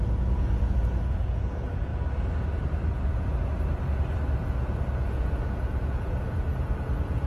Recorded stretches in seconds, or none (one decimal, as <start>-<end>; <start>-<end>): 1.9-2.9; 3.5-4.4